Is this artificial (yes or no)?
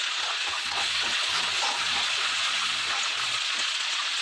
yes